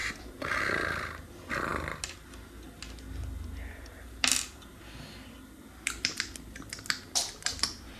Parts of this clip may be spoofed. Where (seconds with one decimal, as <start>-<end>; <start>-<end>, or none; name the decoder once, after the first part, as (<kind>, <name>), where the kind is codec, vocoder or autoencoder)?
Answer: none